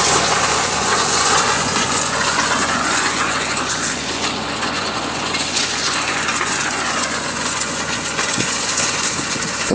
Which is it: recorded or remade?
remade